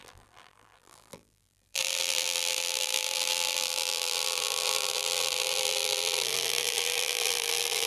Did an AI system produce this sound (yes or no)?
yes